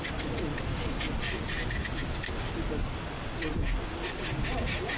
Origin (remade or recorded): recorded